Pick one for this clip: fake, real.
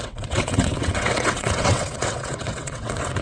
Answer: fake